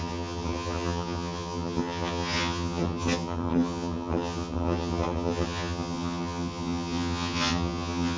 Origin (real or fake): fake